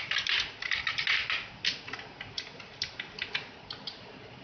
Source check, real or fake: real